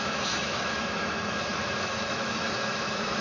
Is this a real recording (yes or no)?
no